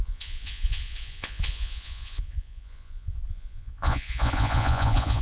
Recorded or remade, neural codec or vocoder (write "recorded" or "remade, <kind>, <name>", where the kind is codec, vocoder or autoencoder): remade, vocoder, Vocos